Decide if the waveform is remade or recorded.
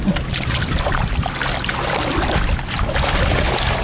recorded